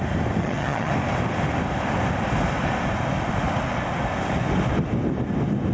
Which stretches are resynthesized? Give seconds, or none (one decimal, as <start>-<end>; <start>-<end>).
0.4-0.9

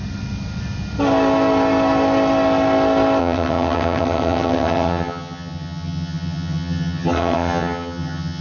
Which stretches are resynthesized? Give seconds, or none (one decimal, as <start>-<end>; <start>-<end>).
3.2-8.4